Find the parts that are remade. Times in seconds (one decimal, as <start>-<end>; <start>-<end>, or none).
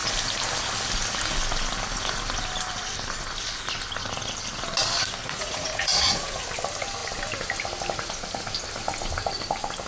5.2-6.5